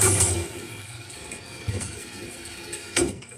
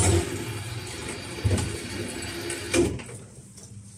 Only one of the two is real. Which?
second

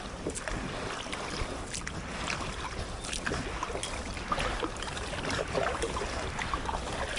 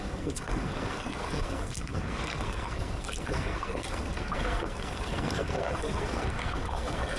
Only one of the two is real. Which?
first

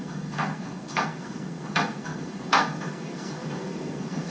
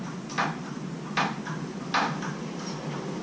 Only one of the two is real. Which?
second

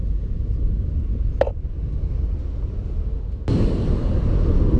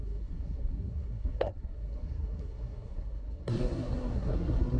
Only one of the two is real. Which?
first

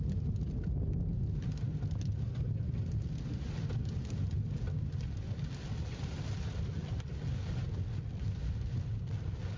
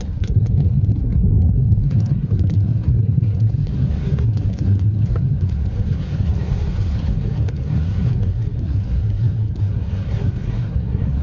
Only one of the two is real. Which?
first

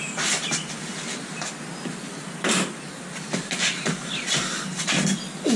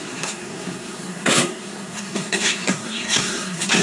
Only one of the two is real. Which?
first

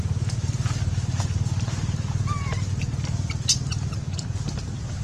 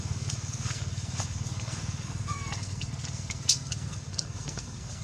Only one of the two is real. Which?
first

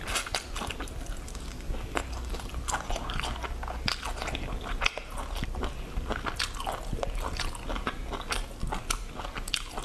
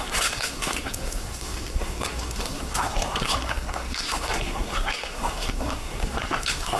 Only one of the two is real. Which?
first